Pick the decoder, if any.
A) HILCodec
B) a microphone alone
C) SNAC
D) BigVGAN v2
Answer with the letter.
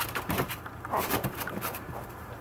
D